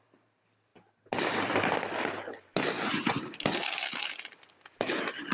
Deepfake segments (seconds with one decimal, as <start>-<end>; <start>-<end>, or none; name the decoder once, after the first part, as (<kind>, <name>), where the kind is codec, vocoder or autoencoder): none